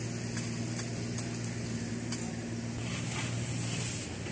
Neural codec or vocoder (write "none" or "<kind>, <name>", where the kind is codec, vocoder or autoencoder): none